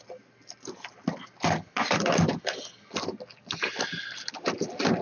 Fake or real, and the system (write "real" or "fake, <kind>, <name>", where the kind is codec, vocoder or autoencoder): real